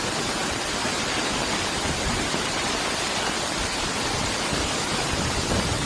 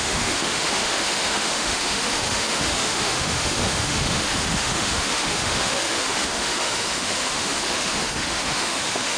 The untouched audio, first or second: first